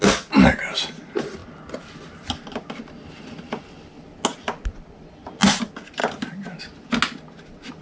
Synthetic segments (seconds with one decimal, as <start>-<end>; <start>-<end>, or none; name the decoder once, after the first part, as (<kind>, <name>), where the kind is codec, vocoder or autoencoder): none